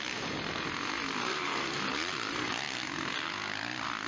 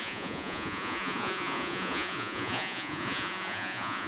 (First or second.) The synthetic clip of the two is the second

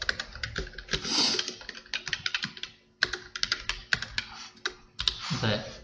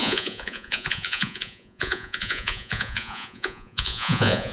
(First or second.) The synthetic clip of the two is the second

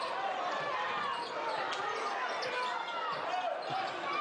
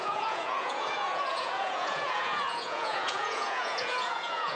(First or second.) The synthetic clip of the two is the second